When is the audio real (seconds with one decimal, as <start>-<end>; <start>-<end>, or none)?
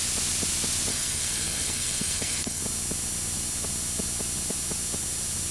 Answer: 0.0-0.9; 2.6-5.5